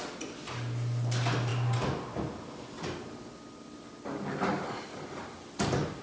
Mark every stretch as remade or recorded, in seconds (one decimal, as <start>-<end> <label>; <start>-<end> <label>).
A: 0.0-6.0 recorded